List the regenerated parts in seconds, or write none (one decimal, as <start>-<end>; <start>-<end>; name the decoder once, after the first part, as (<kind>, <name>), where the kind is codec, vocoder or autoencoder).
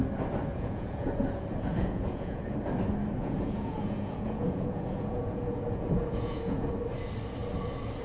0.5-2.4 (vocoder, Vocos); 3.2-6.7